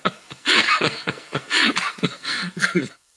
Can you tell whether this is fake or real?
fake